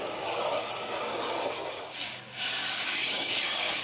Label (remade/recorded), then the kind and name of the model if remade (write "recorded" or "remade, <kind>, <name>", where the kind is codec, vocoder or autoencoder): remade, codec, DAC